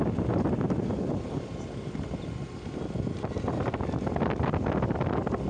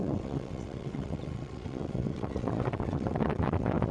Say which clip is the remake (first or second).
second